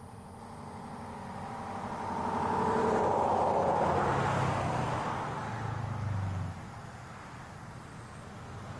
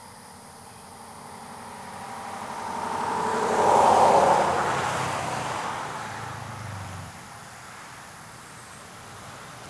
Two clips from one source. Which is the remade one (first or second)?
second